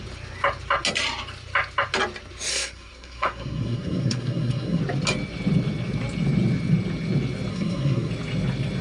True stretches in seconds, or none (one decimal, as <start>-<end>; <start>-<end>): 0.0-2.5; 4.8-7.5; 8.1-8.8